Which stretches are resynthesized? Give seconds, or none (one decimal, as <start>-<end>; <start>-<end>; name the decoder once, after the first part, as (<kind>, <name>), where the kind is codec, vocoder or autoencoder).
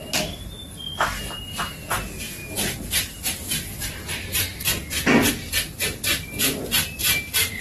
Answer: none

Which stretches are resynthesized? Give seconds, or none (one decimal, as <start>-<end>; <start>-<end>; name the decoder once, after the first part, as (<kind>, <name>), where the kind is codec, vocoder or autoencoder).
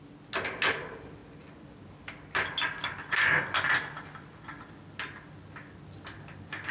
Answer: none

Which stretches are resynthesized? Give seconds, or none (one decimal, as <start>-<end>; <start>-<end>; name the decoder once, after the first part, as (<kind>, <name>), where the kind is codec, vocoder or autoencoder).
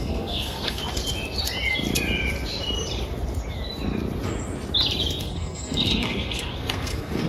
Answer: 0.0-0.8 (codec, SNAC); 5.2-7.3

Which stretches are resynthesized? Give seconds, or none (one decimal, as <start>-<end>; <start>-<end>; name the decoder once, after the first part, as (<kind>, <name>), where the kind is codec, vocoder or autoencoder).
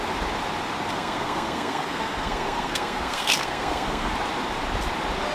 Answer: 0.9-4.1 (codec, SNAC)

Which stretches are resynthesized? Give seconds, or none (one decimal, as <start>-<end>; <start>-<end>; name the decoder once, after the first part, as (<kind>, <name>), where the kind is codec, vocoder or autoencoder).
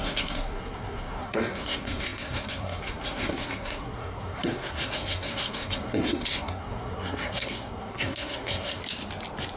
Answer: 0.0-8.8 (codec, SNAC)